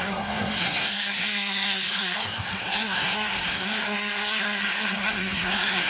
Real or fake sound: fake